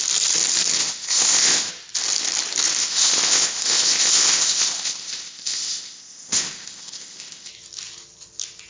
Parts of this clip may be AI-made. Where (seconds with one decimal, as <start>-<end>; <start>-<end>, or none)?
0.8-1.7; 2.8-7.5